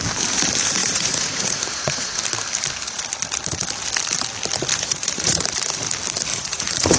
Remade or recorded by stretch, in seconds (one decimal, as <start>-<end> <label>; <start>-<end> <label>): 0.0-0.8 recorded; 0.8-2.2 remade; 2.2-4.7 recorded; 4.7-5.4 remade; 5.4-6.3 recorded; 6.3-7.0 remade